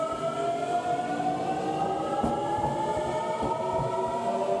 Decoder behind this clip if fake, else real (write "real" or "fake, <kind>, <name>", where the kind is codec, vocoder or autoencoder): real